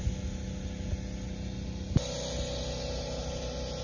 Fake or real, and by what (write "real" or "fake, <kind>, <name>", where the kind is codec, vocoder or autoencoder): real